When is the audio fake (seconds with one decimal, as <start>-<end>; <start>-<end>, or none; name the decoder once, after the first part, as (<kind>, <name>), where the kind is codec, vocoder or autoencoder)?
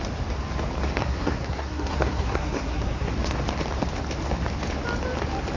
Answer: 1.0-3.1 (codec, SNAC)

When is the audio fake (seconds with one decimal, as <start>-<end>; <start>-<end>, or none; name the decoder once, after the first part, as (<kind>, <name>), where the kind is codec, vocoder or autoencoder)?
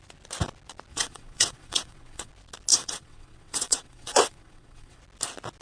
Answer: 0.9-2.3 (vocoder, WaveNeXt); 2.7-5.0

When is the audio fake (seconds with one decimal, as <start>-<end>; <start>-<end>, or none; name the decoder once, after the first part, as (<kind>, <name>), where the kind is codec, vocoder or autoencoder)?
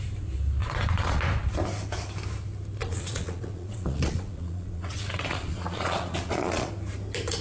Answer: 0.6-1.2 (vocoder, Vocos); 2.8-6.7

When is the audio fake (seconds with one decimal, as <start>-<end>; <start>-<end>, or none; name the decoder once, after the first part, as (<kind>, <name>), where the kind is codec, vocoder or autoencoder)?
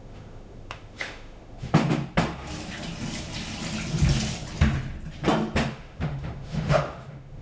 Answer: 0.0-1.8 (autoencoder, DAC-VAE); 5.7-7.4